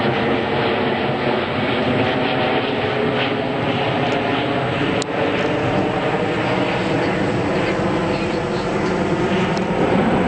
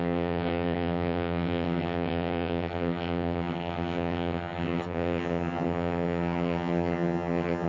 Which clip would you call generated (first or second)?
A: second